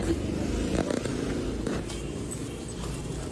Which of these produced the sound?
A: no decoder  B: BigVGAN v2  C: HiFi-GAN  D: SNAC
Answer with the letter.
A